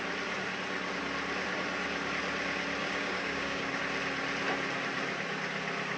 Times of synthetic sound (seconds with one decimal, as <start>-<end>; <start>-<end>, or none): 2.8-3.8